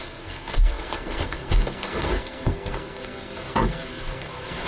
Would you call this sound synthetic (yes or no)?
yes